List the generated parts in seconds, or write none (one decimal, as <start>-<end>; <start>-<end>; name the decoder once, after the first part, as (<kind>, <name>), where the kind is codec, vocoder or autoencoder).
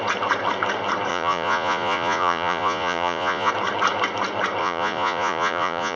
1.1-3.5 (vocoder, Vocos); 4.6-6.0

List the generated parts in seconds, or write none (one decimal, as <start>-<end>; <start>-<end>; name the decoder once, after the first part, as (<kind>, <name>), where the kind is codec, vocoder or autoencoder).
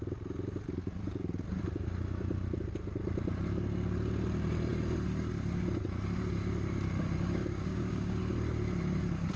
7.4-8.2 (codec, DAC)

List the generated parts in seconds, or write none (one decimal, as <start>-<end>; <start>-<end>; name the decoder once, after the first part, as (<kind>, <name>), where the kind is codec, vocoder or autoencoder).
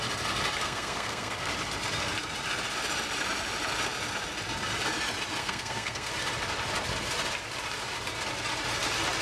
0.6-1.5 (codec, SNAC); 5.4-6.1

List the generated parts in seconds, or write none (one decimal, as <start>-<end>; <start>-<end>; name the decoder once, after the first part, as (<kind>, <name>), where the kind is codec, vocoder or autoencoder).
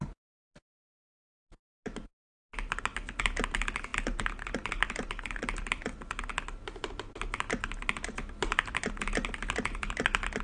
none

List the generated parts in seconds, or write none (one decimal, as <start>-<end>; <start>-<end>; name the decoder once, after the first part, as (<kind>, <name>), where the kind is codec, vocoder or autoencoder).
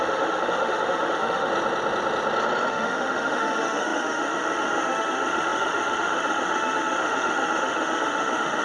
0.0-1.5 (autoencoder, DAC-VAE); 2.7-8.6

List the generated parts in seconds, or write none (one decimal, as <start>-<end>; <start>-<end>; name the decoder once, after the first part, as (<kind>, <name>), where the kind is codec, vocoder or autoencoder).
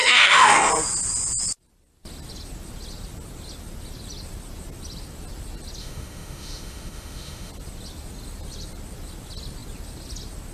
0.0-0.7 (autoencoder, DAC-VAE); 5.8-7.5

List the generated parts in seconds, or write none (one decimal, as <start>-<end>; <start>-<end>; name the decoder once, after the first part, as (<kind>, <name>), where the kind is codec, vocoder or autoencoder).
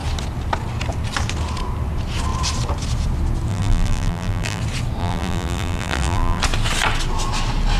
3.5-4.6 (vocoder, BigVGAN v2); 5.0-6.4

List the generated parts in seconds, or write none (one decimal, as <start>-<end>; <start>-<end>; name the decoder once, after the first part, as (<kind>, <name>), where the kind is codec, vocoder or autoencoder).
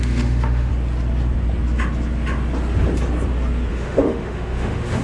0.0-0.7 (autoencoder, DAC-VAE); 3.7-5.0